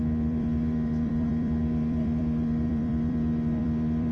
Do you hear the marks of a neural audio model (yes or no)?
yes